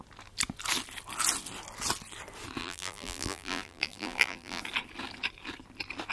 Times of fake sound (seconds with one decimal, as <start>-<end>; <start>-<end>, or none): 2.6-4.6